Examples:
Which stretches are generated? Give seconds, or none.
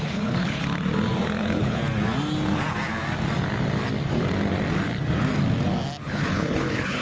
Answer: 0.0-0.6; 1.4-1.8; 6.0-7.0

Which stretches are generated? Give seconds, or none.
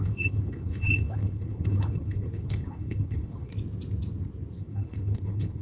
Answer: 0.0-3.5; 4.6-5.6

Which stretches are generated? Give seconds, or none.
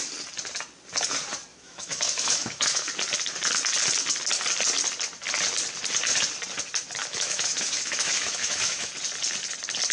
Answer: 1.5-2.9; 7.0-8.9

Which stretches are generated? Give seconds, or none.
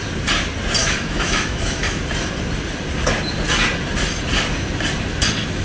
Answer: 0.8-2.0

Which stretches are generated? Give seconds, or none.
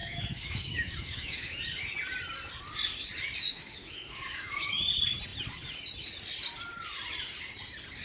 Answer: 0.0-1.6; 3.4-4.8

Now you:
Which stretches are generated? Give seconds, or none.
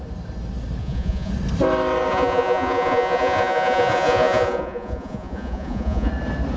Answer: 0.8-1.3; 2.1-6.1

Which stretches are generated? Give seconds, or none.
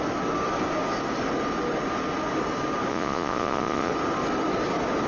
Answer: 2.9-3.9